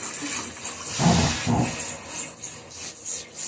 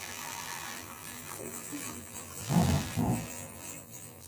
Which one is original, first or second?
first